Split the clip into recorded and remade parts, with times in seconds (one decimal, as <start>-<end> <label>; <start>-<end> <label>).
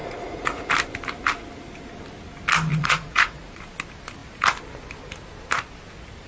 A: 0.0-0.7 remade; 0.7-2.7 recorded; 2.7-3.6 remade; 3.6-6.3 recorded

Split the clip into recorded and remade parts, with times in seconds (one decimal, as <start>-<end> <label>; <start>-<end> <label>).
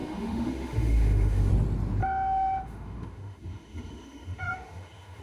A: 0.0-1.5 remade; 1.5-2.0 recorded; 2.0-5.2 remade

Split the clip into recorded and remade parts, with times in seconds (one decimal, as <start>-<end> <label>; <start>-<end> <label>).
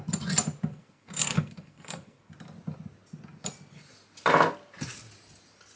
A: 0.0-0.7 recorded; 0.7-2.3 remade; 2.3-5.8 recorded